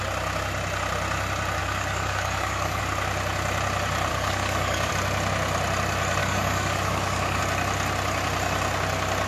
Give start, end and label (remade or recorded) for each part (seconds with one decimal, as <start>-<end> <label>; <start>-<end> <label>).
0.0-1.6 recorded; 1.6-2.8 remade; 2.8-4.1 recorded; 4.1-4.9 remade; 4.9-6.2 recorded; 6.2-7.4 remade; 7.4-9.3 recorded